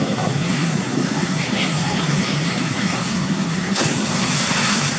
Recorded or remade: remade